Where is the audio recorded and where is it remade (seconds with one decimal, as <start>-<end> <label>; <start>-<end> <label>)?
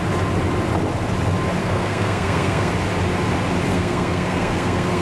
0.0-1.6 recorded; 1.6-2.7 remade; 2.7-3.7 recorded; 3.7-5.0 remade